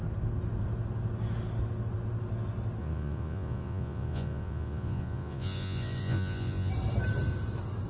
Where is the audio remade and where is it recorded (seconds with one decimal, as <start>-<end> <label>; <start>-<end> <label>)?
0.0-2.8 recorded; 2.8-6.7 remade; 6.7-7.9 recorded